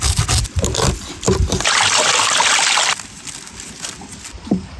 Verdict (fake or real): real